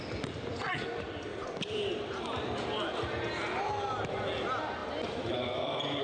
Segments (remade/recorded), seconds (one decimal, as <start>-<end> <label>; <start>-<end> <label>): 0.0-1.3 recorded; 1.3-4.1 remade; 4.1-4.8 recorded; 4.8-6.0 remade